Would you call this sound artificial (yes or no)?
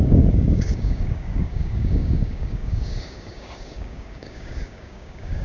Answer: yes